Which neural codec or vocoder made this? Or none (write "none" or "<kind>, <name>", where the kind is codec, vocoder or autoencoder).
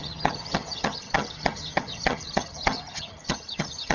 vocoder, HiFi-GAN